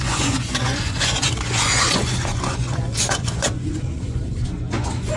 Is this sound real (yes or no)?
no